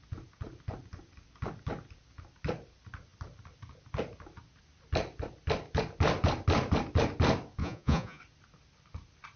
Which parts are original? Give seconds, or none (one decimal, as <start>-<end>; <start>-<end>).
0.0-7.6; 8.2-9.4